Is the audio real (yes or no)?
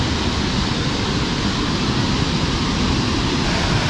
yes